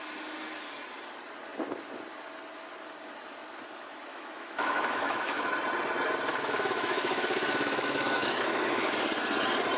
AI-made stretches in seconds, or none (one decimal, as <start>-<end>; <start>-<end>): 4.1-5.5; 6.3-8.9